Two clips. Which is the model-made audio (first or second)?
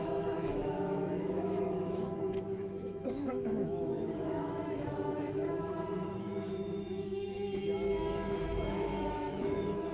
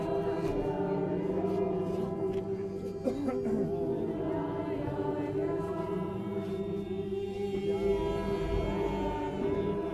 first